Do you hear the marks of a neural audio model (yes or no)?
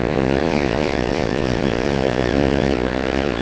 yes